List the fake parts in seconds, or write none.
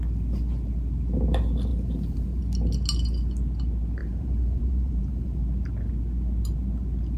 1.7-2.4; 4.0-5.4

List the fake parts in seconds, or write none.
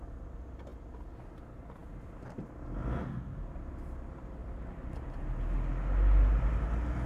4.4-5.2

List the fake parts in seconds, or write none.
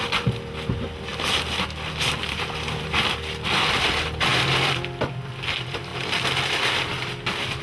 0.0-1.1; 2.2-5.9